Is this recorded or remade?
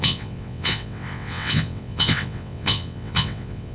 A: remade